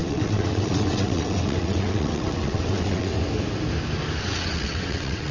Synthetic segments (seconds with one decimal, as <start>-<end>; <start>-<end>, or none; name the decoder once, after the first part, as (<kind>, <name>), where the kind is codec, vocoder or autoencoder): 0.0-3.1 (vocoder, WaveNeXt); 4.2-5.3